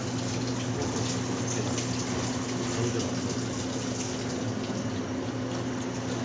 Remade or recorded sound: recorded